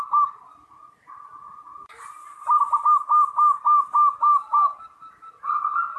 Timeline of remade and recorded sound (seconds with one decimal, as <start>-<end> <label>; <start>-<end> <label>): 0.0-6.0 recorded